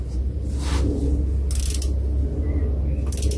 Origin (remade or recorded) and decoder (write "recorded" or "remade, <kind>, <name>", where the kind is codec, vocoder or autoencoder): recorded